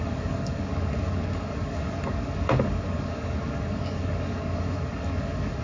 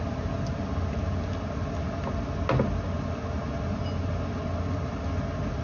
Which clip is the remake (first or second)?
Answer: first